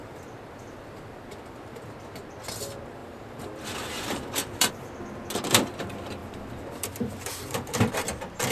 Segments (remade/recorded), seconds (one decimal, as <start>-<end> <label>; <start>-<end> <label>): 0.0-1.9 remade; 1.9-3.0 recorded; 3.0-4.7 remade; 4.7-6.2 recorded; 6.2-7.9 remade; 7.9-8.5 recorded